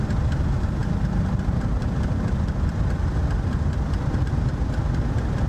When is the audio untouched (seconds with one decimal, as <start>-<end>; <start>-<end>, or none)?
0.0-5.5